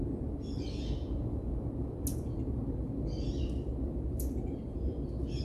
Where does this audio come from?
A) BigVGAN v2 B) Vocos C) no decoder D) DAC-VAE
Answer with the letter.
C